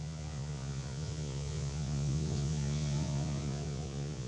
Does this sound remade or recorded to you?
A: remade